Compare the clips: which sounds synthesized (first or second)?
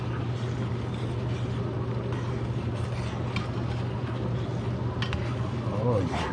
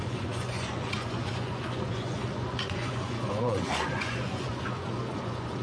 second